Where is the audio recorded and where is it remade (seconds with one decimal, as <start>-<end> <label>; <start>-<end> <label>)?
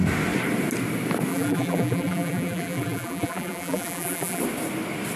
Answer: 0.0-1.3 recorded; 1.3-4.4 remade; 4.4-5.2 recorded